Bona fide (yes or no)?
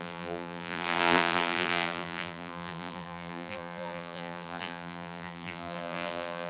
no